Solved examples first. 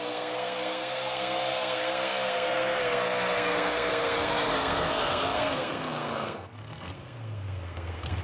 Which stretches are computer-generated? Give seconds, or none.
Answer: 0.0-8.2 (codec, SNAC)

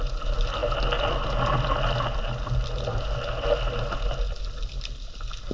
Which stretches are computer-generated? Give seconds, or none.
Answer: none

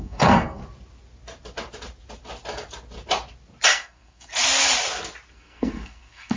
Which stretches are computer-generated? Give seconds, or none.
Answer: 0.0-0.6 (codec, SNAC); 3.7-4.3; 5.3-6.4

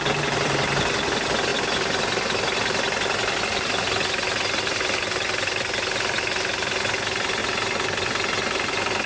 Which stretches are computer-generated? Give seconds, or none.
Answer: none

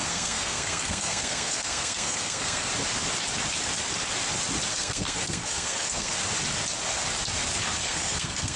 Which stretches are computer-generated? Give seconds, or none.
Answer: 0.0-2.7 (codec, SNAC); 4.7-6.1; 7.8-8.6